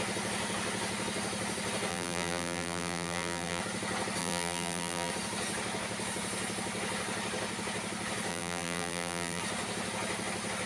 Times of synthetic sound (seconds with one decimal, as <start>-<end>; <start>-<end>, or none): 1.9-3.6; 4.2-5.1; 8.3-9.4